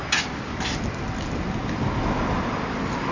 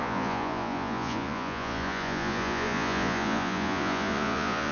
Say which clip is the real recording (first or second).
first